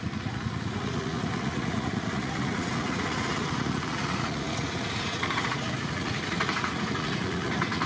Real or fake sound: fake